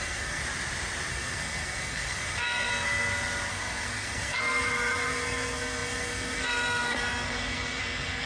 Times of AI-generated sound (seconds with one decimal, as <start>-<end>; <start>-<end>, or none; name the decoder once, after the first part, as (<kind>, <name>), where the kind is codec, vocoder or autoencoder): 0.0-0.4 (codec, SNAC); 1.1-2.7; 3.5-8.3